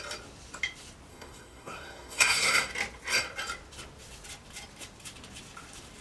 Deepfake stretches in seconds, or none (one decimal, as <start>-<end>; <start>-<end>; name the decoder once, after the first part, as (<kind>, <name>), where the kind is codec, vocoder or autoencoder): 1.1-2.7 (codec, SNAC)